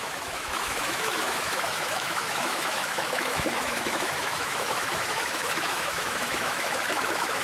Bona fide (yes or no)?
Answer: no